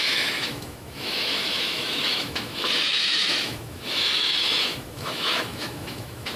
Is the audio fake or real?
fake